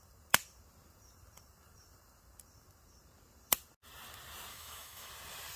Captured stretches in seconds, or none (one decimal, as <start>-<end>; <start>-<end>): 0.0-4.5; 5.1-5.6